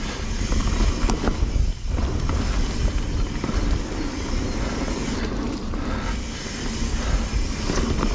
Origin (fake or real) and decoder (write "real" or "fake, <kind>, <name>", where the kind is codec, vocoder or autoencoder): real